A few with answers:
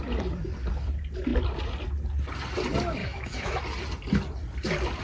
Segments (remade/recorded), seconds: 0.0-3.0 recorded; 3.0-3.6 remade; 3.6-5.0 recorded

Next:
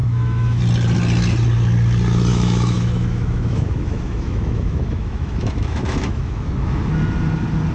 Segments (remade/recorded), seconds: 0.0-0.6 remade; 0.6-2.3 recorded; 2.3-6.9 remade; 6.9-7.7 recorded

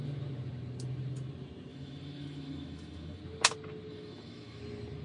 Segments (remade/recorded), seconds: 0.0-1.7 recorded; 1.7-3.2 remade; 3.2-3.9 recorded; 3.9-4.6 remade; 4.6-5.0 recorded